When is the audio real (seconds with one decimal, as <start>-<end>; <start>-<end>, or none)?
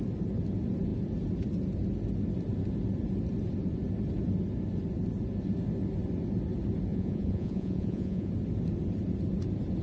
0.0-6.9; 8.3-9.8